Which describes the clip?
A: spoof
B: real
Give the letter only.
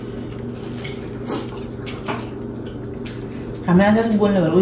B